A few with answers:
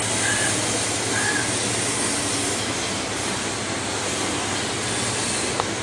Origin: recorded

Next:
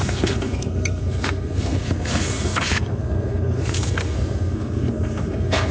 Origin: remade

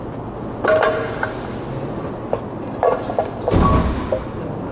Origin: recorded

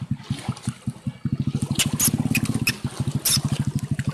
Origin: recorded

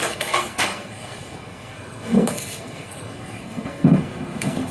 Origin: remade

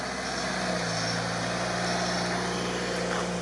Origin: recorded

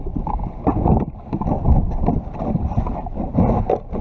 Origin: recorded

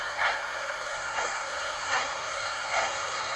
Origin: remade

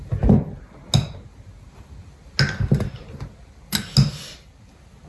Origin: recorded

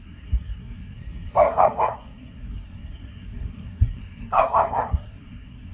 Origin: remade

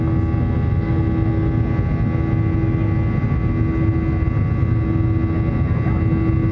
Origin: recorded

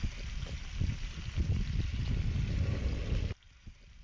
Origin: recorded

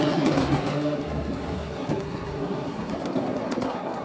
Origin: remade